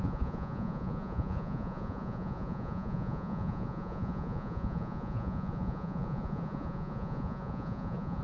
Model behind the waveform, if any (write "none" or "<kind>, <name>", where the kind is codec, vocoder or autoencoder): vocoder, Vocos